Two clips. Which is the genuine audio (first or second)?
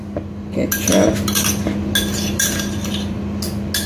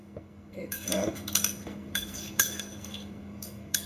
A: first